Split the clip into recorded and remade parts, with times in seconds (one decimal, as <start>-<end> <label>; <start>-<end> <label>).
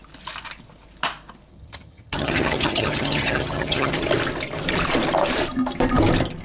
0.0-1.5 recorded; 1.5-3.9 remade; 3.9-6.4 recorded